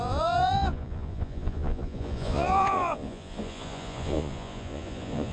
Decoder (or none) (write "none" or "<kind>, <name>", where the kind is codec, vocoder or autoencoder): vocoder, Vocos